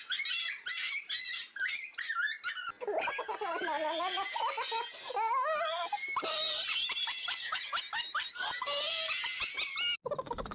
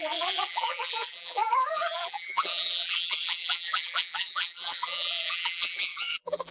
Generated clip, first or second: second